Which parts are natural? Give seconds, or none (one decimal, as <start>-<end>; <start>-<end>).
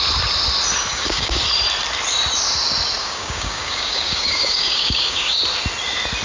0.0-0.9; 1.4-3.0; 5.4-6.2